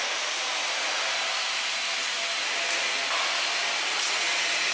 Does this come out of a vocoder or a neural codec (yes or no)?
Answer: no